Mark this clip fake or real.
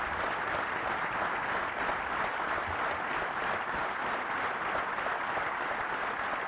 real